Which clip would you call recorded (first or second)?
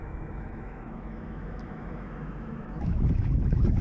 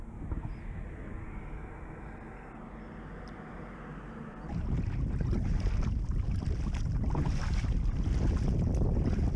second